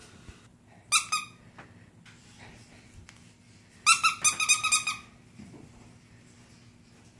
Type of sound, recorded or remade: recorded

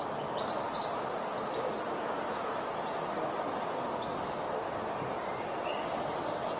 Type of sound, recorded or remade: recorded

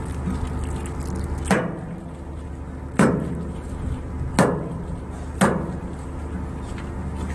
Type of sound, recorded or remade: recorded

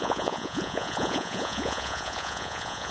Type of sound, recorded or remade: remade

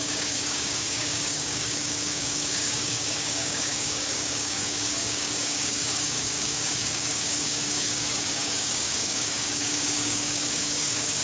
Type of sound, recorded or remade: remade